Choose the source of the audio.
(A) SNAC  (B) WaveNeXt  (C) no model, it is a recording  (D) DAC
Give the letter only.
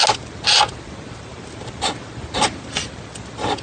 C